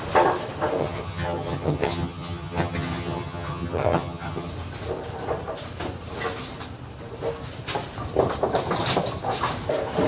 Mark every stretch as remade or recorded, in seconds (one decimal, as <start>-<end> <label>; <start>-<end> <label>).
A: 0.0-0.8 recorded; 0.8-4.5 remade; 4.5-10.1 recorded